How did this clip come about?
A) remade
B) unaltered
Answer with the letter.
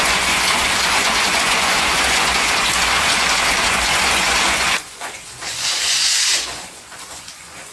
A